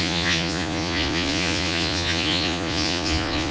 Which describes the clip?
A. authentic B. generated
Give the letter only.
B